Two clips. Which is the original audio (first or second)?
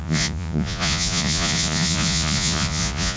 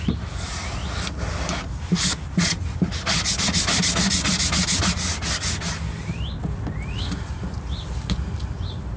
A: second